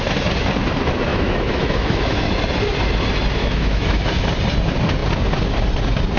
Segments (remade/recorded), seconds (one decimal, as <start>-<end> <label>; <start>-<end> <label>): 0.0-1.1 recorded; 1.1-2.4 remade; 2.4-3.4 recorded; 3.4-4.0 remade; 4.0-6.2 recorded